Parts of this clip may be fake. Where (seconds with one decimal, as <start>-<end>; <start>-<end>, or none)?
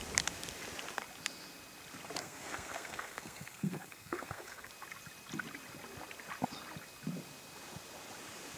2.2-4.7